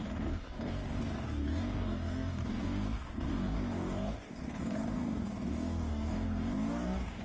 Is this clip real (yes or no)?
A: no